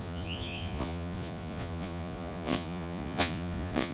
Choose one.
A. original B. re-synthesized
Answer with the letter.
B